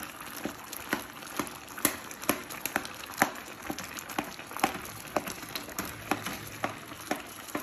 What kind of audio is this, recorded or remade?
recorded